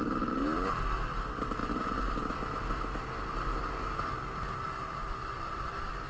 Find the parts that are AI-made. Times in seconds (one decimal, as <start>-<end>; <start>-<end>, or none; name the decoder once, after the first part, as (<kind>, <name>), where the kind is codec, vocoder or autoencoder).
5.0-6.1 (vocoder, BigVGAN v2)

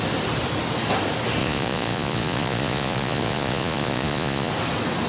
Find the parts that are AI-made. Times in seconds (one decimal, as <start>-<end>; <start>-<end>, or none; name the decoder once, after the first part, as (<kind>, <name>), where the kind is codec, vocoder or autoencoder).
1.4-4.5 (vocoder, Vocos)

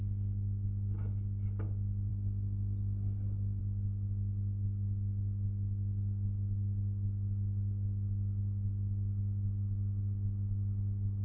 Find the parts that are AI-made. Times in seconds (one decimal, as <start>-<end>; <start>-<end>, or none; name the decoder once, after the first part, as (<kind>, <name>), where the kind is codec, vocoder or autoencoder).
none